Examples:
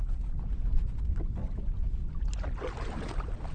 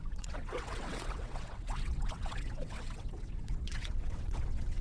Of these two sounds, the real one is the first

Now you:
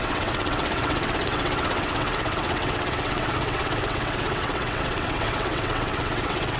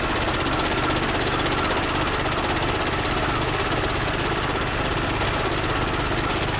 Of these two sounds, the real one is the second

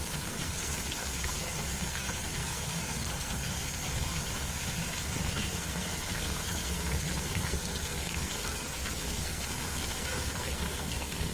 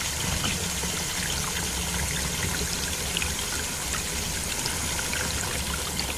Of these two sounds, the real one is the second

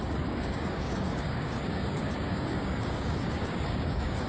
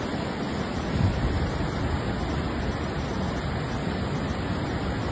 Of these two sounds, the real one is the second